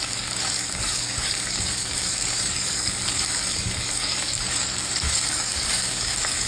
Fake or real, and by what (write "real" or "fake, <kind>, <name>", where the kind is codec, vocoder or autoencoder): fake, codec, DAC